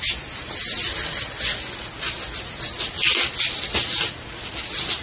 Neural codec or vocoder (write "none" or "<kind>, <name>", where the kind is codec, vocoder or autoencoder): none